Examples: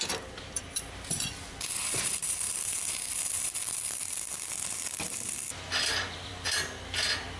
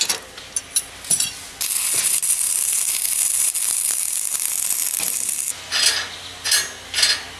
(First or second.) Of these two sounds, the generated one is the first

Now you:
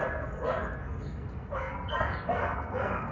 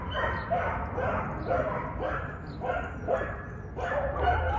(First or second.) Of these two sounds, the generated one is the first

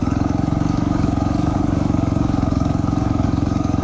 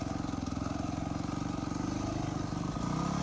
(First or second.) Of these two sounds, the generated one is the first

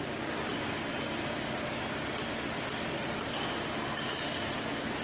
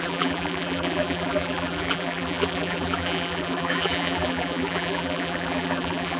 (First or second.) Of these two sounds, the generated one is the second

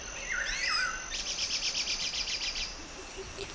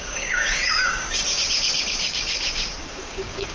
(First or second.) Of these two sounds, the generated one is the second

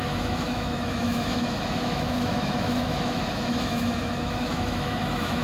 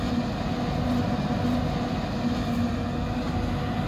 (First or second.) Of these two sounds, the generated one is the first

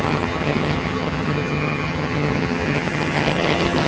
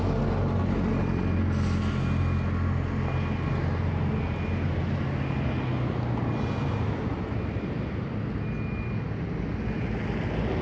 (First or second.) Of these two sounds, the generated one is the first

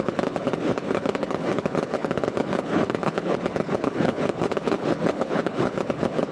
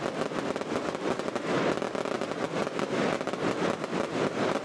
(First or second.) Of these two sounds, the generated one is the first